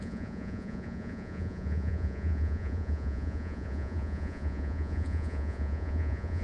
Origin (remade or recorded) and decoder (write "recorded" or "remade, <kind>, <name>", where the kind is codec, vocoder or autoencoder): remade, vocoder, Vocos